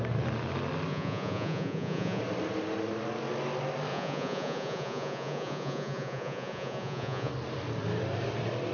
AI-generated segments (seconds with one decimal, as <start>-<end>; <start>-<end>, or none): 0.9-2.2; 3.9-7.3